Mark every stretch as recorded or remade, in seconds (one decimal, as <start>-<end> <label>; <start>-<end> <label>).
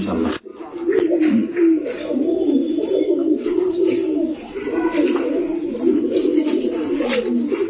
0.0-7.7 recorded